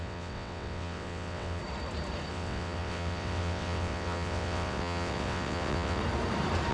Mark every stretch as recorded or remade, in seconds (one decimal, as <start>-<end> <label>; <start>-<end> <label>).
0.0-1.6 remade; 1.6-2.3 recorded; 2.3-6.0 remade; 6.0-6.7 recorded